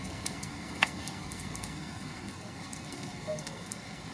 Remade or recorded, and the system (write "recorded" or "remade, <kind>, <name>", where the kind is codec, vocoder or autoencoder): remade, codec, SNAC